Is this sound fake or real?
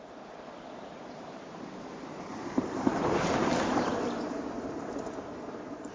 fake